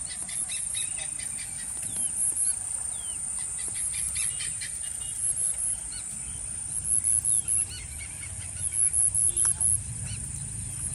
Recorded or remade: recorded